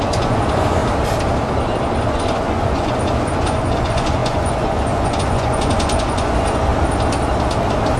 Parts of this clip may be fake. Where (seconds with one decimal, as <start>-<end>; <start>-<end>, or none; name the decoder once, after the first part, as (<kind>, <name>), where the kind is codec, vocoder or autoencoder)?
0.0-0.8 (vocoder, Vocos); 2.1-6.7